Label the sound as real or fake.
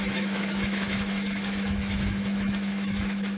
fake